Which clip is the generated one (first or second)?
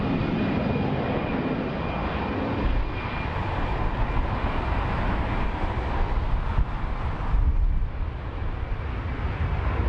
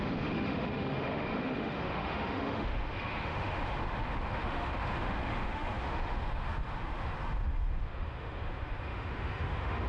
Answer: second